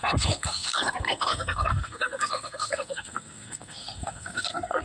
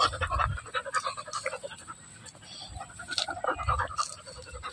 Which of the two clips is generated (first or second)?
first